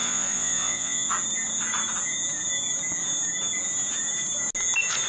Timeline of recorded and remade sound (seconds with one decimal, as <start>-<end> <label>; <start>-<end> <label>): 0.0-1.1 remade; 1.1-5.1 recorded